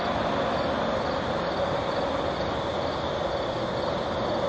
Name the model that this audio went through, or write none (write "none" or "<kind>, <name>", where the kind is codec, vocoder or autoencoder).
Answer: none